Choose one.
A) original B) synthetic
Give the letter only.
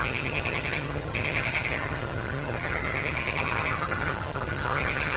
B